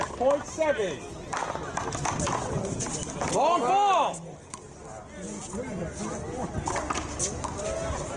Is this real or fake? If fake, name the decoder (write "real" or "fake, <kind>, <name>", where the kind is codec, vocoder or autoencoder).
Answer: real